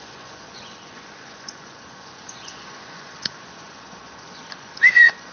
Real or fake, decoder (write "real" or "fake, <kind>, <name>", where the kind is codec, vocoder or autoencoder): fake, vocoder, Vocos